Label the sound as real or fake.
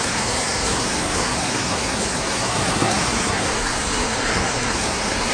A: fake